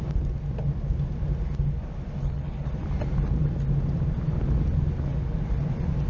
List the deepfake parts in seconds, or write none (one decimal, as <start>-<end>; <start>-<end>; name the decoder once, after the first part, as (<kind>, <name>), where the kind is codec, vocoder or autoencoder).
2.2-2.7 (codec, HILCodec)